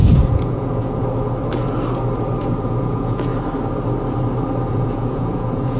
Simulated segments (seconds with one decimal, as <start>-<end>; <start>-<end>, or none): 0.0-1.0; 2.4-3.3; 4.7-5.8